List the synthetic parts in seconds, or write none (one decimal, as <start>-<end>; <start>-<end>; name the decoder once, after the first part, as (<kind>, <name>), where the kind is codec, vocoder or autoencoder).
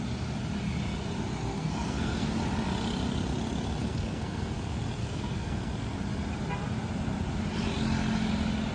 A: 1.5-2.3 (codec, SNAC); 3.8-4.5; 5.0-5.7